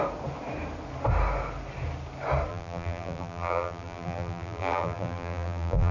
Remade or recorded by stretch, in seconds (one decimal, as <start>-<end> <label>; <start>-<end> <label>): 0.0-2.5 recorded; 2.5-5.9 remade